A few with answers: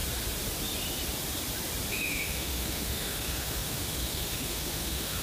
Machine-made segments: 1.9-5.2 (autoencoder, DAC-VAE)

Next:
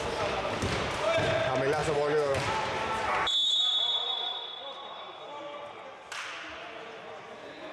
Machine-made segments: none

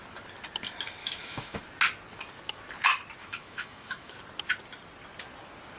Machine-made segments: 1.0-1.6 (autoencoder, DAC-VAE); 3.2-4.1

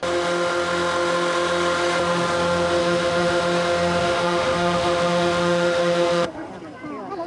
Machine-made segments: 2.8-3.4 (autoencoder, DAC-VAE); 4.0-6.5

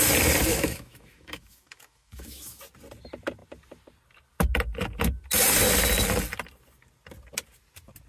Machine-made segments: 0.5-2.6 (autoencoder, DAC-VAE)

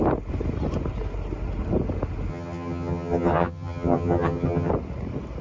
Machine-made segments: 2.3-4.7 (vocoder, HiFi-GAN)

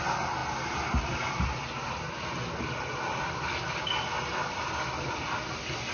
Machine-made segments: none

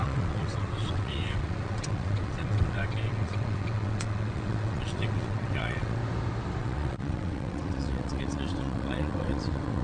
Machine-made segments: 0.0-6.0 (vocoder, WaveNeXt); 6.6-9.8